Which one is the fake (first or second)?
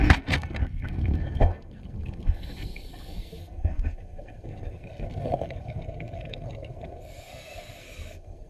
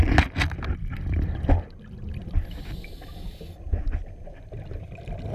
first